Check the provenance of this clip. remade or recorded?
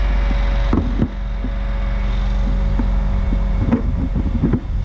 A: recorded